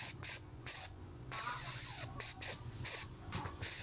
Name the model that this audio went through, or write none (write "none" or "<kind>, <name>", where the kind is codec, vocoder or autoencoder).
vocoder, Vocos